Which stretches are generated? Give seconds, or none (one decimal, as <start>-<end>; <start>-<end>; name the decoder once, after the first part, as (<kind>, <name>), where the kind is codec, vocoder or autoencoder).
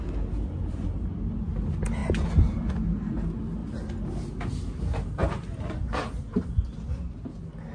none